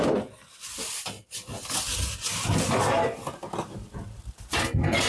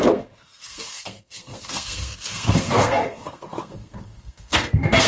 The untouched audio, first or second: first